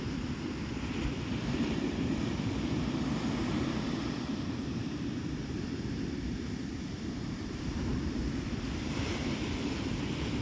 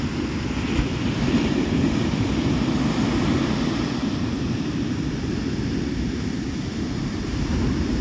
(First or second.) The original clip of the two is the second